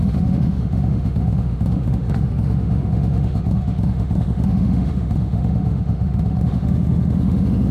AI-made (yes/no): yes